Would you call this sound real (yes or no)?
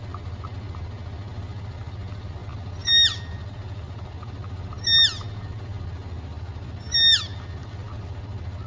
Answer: yes